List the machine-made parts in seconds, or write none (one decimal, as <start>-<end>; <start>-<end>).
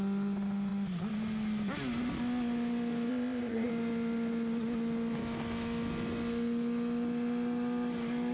3.1-3.7